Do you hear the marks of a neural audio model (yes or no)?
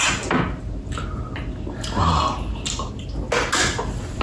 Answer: no